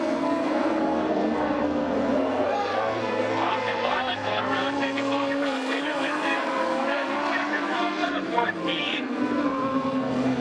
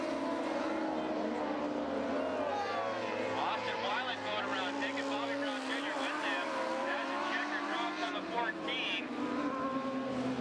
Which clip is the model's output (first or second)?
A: first